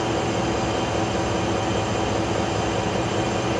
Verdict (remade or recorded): recorded